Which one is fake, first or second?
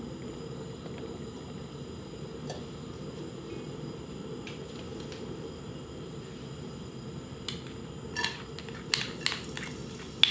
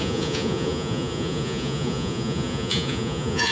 second